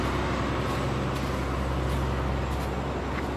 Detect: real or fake real